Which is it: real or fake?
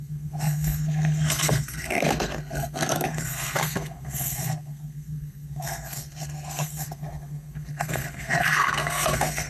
fake